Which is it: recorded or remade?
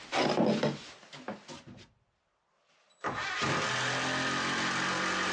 recorded